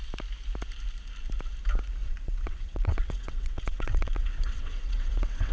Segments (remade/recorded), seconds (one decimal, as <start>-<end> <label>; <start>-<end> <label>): 0.0-2.0 recorded; 2.0-5.5 remade